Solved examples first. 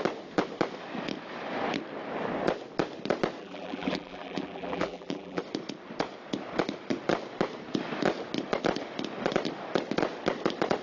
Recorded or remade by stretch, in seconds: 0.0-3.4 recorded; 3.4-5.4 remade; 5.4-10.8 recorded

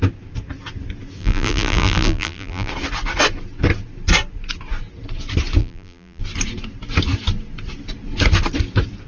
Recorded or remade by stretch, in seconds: 0.0-1.2 recorded; 1.2-2.7 remade; 2.7-5.6 recorded; 5.6-6.2 remade; 6.2-9.1 recorded

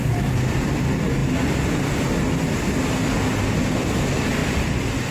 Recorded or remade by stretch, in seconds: 0.0-5.1 recorded

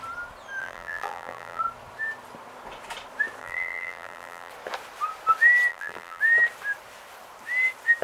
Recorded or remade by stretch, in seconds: 0.0-0.6 recorded; 0.6-1.6 remade; 1.6-3.4 recorded; 3.4-4.5 remade; 4.5-5.7 recorded; 5.7-6.2 remade; 6.2-8.0 recorded